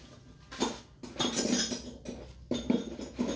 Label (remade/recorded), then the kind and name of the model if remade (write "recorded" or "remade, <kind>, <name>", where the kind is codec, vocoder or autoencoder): recorded